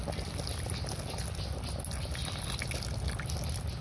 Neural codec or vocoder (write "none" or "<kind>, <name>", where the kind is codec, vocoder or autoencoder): none